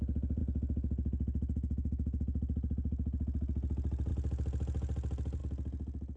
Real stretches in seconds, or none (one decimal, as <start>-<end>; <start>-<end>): 0.0-6.2